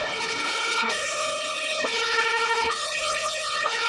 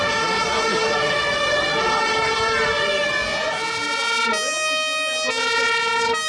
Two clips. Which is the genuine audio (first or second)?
second